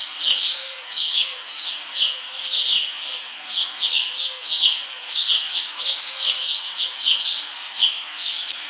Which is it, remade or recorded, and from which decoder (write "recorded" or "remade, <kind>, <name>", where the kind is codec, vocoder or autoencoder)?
remade, codec, SNAC